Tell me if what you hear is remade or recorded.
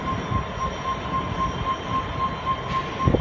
recorded